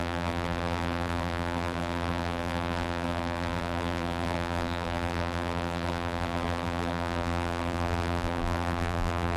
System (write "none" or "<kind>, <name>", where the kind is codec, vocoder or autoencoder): vocoder, BigVGAN v2